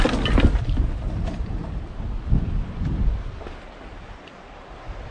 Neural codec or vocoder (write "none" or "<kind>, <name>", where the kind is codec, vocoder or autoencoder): none